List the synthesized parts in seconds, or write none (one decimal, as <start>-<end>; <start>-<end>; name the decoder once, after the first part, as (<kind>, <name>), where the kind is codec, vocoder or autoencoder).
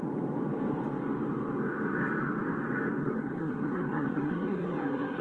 3.0-5.2 (codec, SNAC)